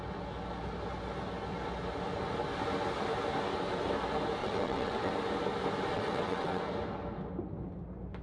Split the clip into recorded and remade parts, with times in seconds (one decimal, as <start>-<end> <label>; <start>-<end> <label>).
0.0-4.4 recorded; 4.4-5.1 remade; 5.1-5.9 recorded; 5.9-6.6 remade; 6.6-8.2 recorded